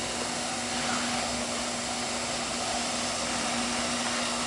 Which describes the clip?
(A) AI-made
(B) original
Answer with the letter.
B